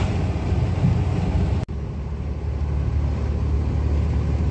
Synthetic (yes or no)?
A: no